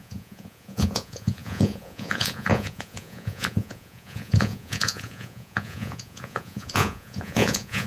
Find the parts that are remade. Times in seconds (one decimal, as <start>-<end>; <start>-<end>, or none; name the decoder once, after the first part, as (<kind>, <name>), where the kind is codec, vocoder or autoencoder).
0.0-7.9 (vocoder, Vocos)